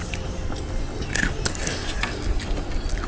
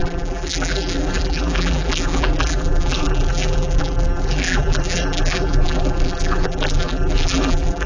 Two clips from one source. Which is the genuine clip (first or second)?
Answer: first